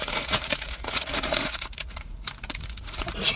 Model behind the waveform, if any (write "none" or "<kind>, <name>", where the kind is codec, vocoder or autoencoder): vocoder, Vocos